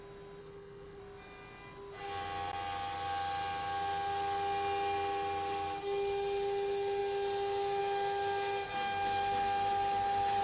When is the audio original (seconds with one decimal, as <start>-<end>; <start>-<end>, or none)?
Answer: 0.0-0.4; 1.0-10.4